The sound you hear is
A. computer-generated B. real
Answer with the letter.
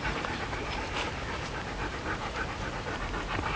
A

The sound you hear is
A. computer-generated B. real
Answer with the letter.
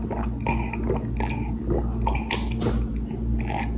B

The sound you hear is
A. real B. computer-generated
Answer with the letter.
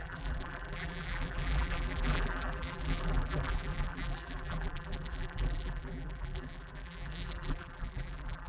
B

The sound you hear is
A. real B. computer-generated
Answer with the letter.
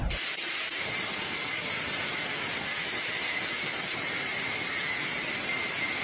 A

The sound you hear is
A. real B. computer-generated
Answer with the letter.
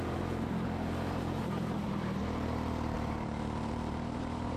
B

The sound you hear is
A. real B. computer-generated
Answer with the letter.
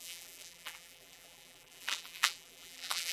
B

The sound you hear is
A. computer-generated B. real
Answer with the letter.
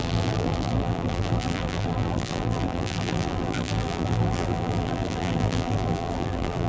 A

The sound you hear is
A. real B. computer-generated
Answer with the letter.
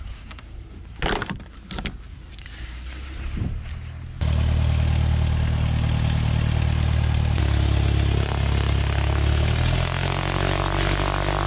A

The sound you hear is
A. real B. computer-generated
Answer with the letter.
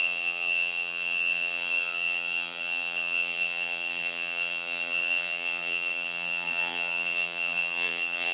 B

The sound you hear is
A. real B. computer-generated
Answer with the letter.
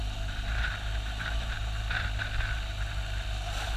A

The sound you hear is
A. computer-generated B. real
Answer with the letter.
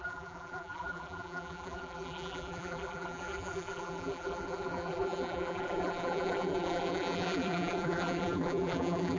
A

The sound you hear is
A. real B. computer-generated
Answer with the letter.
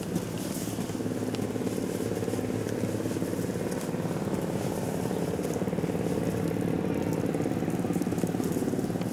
A